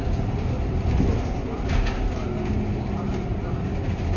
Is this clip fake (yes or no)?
no